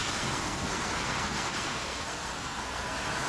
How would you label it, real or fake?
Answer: fake